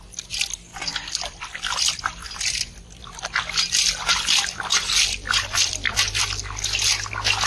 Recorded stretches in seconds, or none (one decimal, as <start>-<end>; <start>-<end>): 0.0-0.7; 1.9-4.1; 6.1-7.5